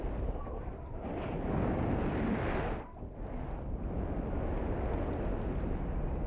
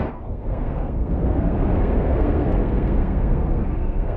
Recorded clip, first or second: first